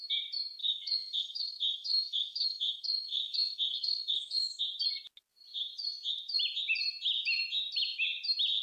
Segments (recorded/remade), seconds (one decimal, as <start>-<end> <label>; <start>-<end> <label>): 0.0-0.6 recorded; 0.6-4.6 remade; 4.6-8.6 recorded